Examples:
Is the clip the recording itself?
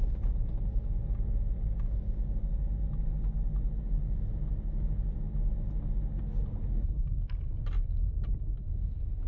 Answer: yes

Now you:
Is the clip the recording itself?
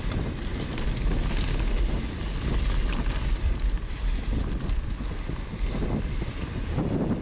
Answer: yes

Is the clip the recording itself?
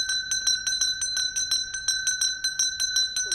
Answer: yes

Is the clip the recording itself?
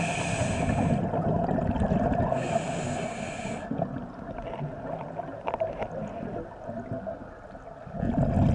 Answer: yes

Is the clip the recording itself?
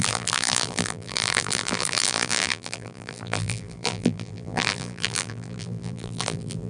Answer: no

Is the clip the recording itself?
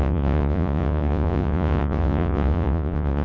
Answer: no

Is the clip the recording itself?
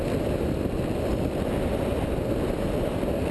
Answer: yes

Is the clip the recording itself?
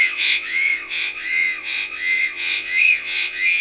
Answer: no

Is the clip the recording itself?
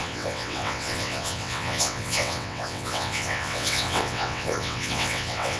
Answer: no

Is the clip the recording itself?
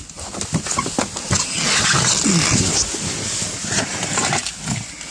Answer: yes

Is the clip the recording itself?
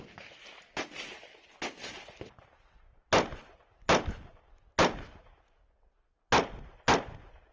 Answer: yes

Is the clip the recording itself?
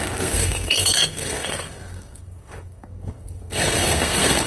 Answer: no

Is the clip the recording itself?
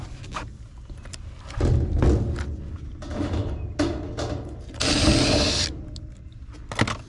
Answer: yes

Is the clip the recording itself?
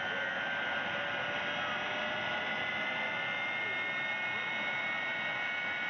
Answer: yes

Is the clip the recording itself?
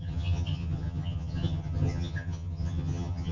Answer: no